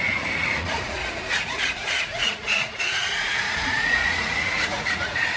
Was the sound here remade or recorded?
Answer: remade